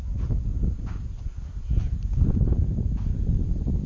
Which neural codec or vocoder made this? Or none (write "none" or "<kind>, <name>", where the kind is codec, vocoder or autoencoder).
none